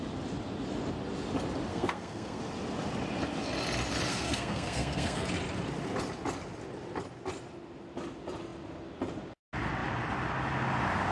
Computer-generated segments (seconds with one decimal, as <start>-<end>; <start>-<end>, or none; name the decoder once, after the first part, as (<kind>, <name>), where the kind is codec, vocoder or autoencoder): 1.7-2.4 (codec, SNAC); 4.1-5.3